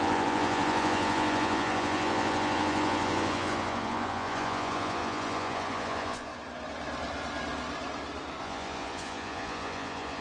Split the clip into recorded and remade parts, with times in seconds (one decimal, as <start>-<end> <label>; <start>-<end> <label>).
0.0-6.3 remade; 6.3-8.4 recorded; 8.4-10.2 remade